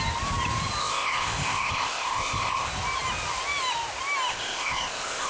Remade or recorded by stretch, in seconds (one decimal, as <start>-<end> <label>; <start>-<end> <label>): 0.0-0.8 recorded; 0.8-2.7 remade; 2.7-4.3 recorded; 4.3-5.3 remade